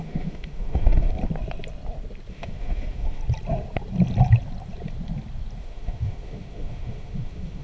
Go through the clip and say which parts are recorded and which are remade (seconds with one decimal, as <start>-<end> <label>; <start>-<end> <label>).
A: 0.0-1.1 remade; 1.1-2.3 recorded; 2.3-3.2 remade; 3.2-5.6 recorded; 5.6-7.6 remade